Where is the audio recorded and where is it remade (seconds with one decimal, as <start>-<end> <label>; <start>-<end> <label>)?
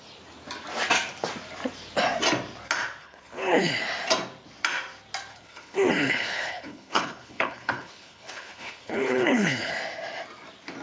0.0-3.0 recorded; 3.0-3.7 remade; 3.7-5.3 recorded; 5.3-9.7 remade; 9.7-10.8 recorded